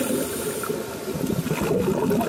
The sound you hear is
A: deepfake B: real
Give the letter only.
B